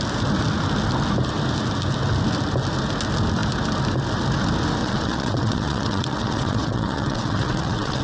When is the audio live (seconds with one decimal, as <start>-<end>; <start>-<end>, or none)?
0.0-4.8